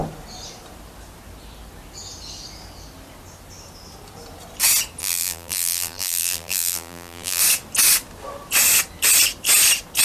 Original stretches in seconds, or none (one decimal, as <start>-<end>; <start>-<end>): 0.0-5.0; 7.4-10.0